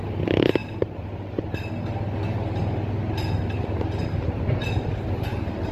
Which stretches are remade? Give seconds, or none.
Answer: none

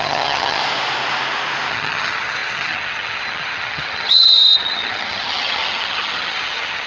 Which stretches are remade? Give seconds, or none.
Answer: 0.0-0.6 (vocoder, HiFi-GAN); 1.7-6.9

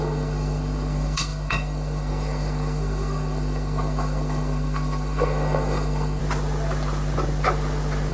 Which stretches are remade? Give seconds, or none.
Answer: 0.0-6.2 (codec, SNAC)

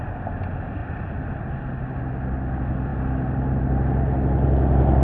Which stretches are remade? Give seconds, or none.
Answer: none

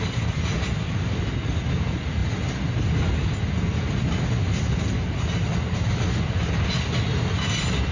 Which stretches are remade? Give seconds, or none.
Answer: none

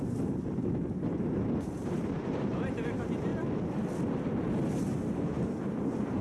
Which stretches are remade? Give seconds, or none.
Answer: 0.0-3.3 (vocoder, BigVGAN v2); 4.8-6.2

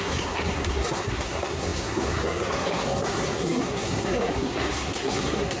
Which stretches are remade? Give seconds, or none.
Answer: 0.0-5.6 (codec, SNAC)

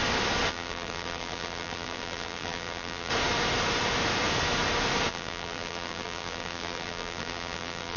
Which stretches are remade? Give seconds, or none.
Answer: 0.5-3.1 (vocoder, BigVGAN v2); 5.1-8.0